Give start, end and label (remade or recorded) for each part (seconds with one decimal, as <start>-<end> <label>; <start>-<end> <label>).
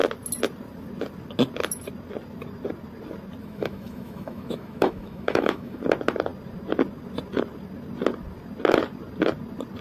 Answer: 0.0-3.4 recorded; 3.4-5.8 remade; 5.8-9.8 recorded